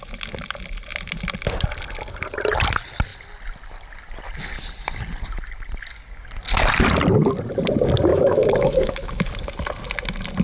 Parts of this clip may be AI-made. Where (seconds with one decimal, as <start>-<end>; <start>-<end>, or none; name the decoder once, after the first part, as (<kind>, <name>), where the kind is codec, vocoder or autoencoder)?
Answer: 8.1-9.3 (autoencoder, DAC-VAE)